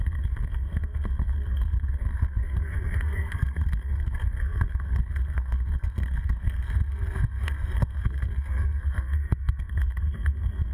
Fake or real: fake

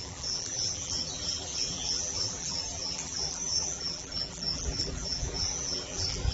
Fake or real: fake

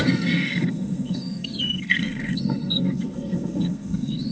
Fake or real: fake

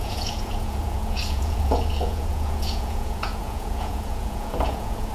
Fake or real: fake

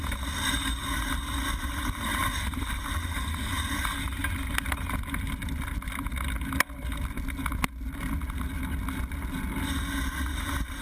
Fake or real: real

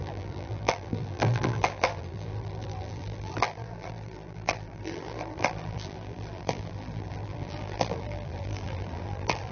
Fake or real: fake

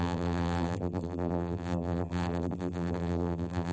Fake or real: fake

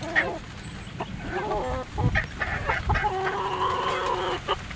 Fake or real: real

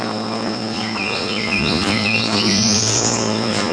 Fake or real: fake